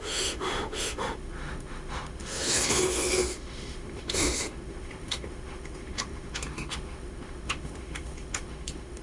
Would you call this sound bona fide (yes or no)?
no